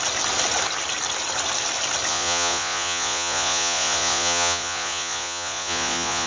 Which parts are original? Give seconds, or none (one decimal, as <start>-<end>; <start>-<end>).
0.0-2.1